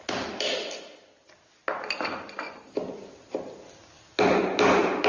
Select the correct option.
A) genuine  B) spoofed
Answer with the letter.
A